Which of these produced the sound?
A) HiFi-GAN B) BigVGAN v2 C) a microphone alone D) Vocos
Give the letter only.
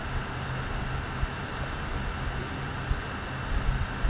C